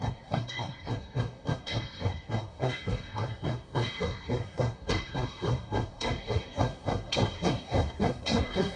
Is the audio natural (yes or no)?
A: no